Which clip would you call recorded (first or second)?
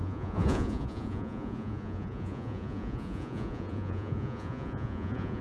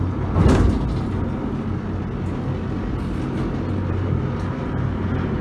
second